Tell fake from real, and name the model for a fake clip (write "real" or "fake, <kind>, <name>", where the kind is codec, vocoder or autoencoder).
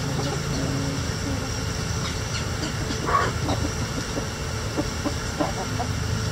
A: real